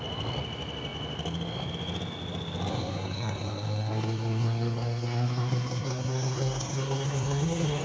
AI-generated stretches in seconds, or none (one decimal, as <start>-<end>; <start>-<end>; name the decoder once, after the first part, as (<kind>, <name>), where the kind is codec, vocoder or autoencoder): 2.7-7.8 (codec, SNAC)